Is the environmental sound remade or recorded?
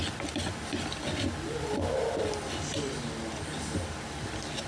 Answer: recorded